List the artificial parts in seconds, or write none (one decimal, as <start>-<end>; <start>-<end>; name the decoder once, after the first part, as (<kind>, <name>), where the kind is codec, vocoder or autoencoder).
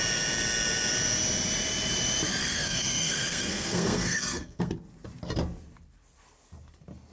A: 2.4-4.7 (codec, SNAC)